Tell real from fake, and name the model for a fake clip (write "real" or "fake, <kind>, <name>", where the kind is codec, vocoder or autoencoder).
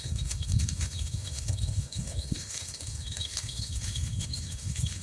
fake, autoencoder, DAC-VAE